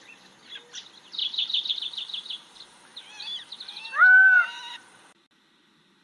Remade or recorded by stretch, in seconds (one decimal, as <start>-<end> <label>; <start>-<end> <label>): 0.0-6.0 recorded